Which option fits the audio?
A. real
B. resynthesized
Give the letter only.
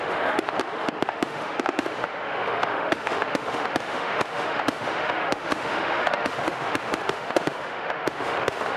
B